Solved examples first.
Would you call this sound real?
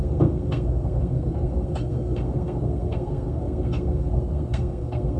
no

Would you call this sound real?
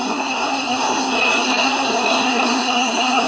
no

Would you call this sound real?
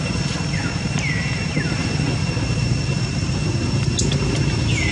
yes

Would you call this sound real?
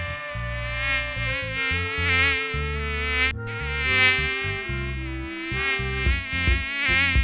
yes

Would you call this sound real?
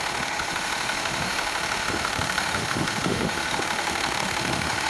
no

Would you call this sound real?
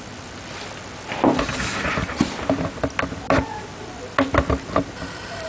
yes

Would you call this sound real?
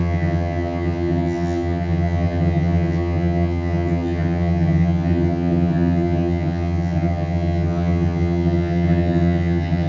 no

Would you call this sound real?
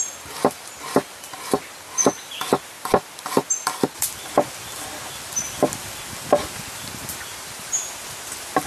yes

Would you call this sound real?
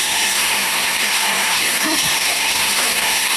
no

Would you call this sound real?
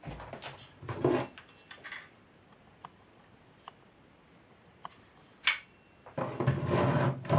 yes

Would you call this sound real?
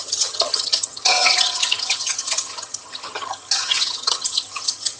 no